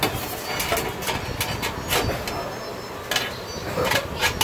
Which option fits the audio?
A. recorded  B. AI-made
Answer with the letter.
A